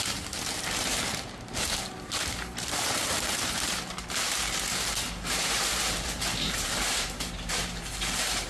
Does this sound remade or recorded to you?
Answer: remade